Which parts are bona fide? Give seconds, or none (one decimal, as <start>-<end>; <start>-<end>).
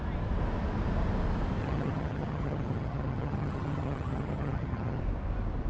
0.0-1.6; 5.0-5.7